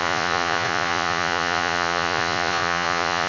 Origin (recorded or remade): remade